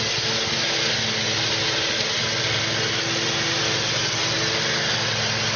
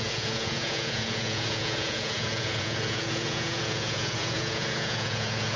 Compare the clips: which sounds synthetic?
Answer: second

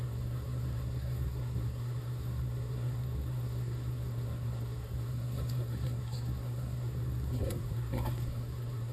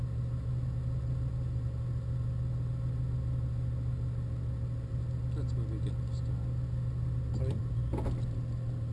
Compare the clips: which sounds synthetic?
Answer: first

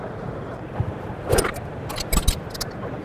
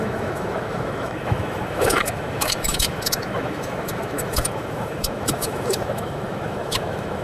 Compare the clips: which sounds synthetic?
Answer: second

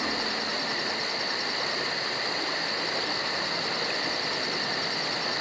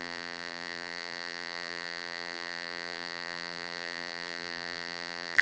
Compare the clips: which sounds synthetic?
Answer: second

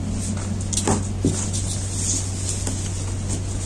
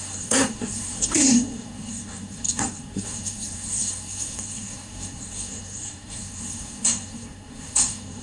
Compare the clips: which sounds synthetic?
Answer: second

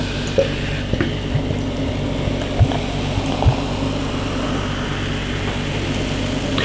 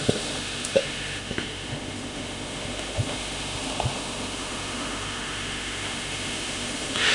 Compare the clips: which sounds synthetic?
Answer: second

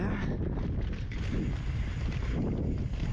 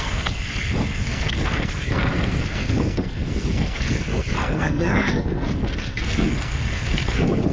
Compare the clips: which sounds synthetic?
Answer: second